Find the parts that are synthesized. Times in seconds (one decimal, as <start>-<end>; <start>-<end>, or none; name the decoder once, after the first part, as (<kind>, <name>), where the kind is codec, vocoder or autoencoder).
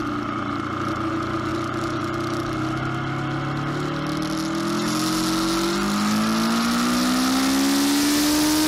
none